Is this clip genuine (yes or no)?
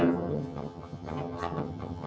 no